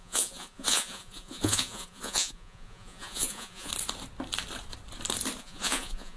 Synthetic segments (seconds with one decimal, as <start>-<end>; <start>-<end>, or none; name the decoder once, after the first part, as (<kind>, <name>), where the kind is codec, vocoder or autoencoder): 0.0-3.7 (vocoder, Vocos); 5.4-6.2